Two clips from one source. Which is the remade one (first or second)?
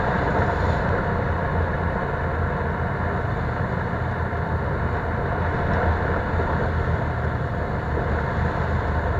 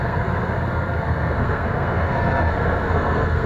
second